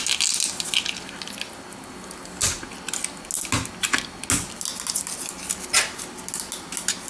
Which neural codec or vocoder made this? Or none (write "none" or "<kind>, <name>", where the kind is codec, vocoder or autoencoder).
none